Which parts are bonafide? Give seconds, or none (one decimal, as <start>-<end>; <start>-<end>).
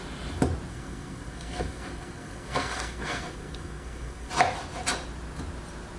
0.0-0.7; 4.3-6.0